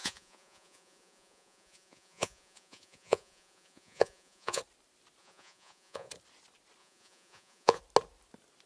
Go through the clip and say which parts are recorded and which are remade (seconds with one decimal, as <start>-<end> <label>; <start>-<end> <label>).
0.0-4.6 remade; 4.6-5.2 recorded; 5.2-6.1 remade; 6.1-6.8 recorded; 6.8-7.8 remade; 7.8-8.7 recorded